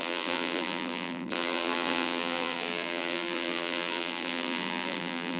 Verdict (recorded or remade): remade